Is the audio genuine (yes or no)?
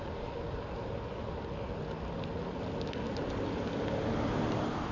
yes